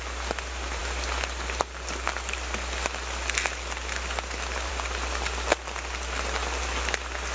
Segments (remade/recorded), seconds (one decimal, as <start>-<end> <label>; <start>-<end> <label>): 0.0-7.3 recorded